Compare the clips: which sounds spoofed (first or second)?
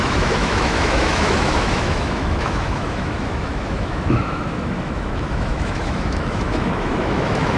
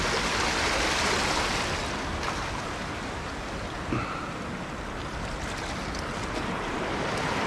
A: first